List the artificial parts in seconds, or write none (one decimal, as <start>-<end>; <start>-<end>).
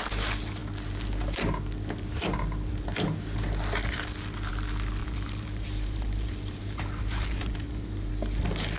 5.0-8.1